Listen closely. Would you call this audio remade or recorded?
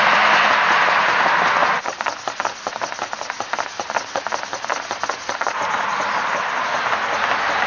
recorded